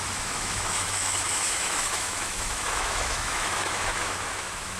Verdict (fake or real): fake